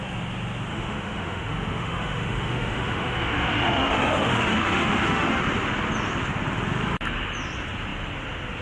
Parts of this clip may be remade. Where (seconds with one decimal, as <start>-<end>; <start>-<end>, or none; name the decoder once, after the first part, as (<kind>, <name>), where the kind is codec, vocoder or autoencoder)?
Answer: 0.7-5.4 (autoencoder, DAC-VAE)